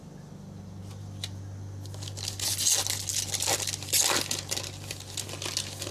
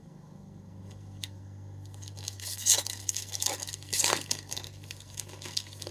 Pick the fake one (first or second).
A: second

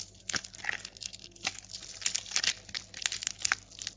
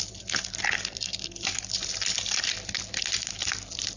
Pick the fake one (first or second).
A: second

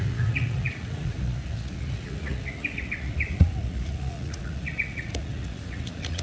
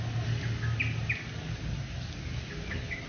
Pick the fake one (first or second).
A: first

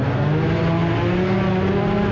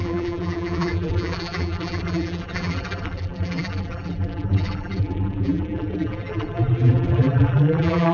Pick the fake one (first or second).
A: second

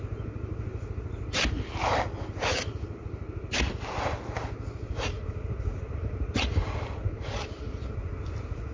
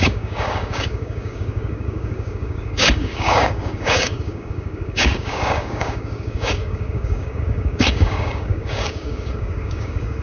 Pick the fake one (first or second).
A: second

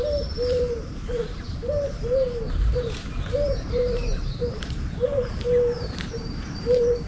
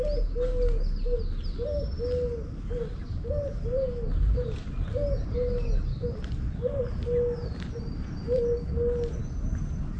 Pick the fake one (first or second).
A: first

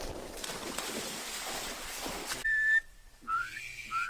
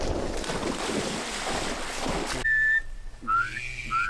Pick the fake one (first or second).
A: first